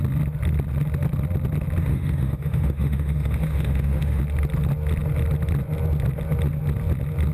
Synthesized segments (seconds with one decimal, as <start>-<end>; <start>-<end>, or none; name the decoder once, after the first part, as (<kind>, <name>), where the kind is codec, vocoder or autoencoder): 1.8-4.2 (autoencoder, DAC-VAE)